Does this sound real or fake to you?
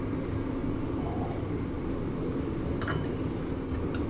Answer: real